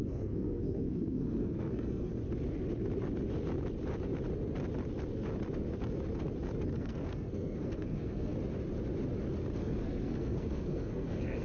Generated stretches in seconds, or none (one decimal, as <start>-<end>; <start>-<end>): 0.0-2.1; 6.7-8.3; 9.6-11.4